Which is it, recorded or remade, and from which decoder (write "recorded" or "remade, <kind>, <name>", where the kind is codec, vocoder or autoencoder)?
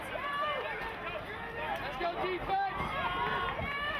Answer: recorded